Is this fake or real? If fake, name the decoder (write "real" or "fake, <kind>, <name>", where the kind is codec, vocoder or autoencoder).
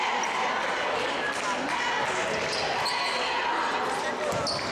real